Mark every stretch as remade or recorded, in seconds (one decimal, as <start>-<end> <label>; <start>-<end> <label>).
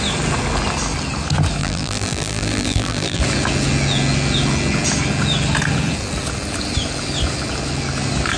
0.0-1.6 recorded; 1.6-3.2 remade; 3.2-8.4 recorded